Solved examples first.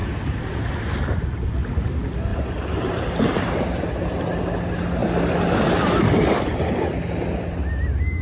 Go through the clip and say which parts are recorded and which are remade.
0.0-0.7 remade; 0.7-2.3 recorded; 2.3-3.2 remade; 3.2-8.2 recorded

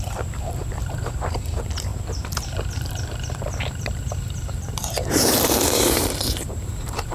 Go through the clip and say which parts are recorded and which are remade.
0.0-7.1 remade

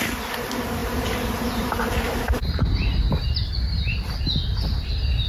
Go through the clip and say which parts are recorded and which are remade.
0.0-0.8 recorded; 0.8-4.0 remade; 4.0-5.3 recorded

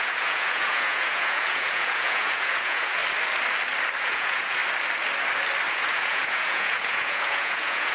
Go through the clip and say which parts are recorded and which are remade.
0.0-3.0 remade; 3.0-4.0 recorded; 4.0-4.6 remade; 4.6-5.7 recorded; 5.7-7.9 remade

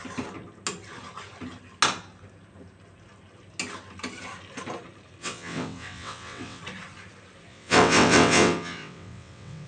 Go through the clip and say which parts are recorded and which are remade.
0.0-5.2 recorded; 5.2-6.6 remade; 6.6-7.5 recorded; 7.5-9.7 remade

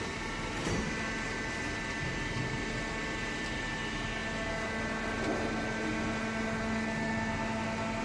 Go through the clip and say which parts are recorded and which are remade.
0.0-8.0 recorded

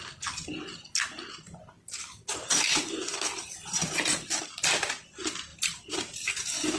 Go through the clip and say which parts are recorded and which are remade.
0.0-6.8 recorded